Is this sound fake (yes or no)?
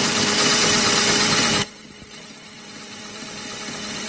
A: yes